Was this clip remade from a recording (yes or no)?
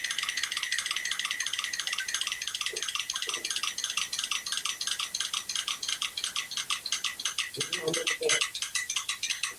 no